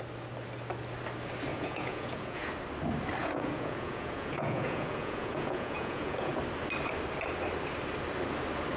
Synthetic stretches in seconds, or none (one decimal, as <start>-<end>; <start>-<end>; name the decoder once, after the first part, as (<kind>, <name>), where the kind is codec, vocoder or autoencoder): 1.5-2.5 (vocoder, Vocos); 3.2-6.4